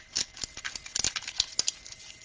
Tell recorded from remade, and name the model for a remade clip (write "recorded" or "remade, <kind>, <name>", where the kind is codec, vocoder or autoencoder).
recorded